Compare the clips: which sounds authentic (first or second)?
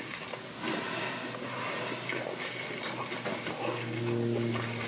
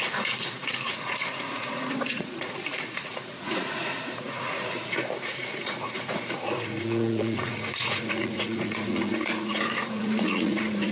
first